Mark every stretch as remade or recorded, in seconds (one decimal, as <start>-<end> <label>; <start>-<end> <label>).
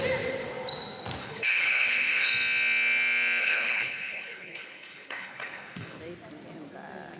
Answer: 0.0-1.2 recorded; 1.2-2.3 remade; 2.3-3.4 recorded; 3.4-6.0 remade; 6.0-7.2 recorded